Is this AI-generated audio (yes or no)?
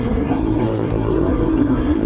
yes